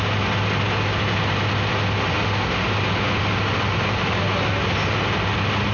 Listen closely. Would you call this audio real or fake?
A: real